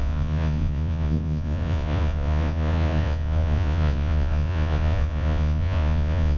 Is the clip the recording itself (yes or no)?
no